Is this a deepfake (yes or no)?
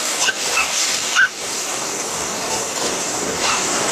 yes